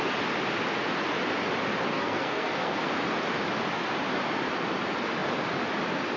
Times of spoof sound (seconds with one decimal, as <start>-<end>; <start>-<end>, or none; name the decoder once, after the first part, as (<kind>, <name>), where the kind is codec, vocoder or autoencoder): 1.9-2.9 (codec, SNAC)